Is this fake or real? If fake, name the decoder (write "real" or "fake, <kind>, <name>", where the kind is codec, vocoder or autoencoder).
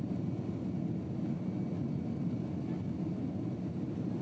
real